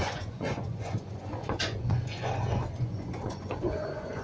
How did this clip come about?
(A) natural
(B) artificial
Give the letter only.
B